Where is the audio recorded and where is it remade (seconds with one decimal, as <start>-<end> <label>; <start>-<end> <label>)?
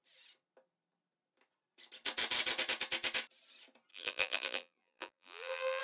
0.0-3.9 recorded; 3.9-5.8 remade